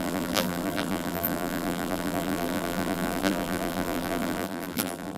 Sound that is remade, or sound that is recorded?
remade